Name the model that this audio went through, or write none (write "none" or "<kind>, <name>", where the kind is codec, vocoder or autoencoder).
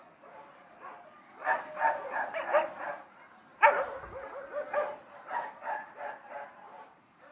none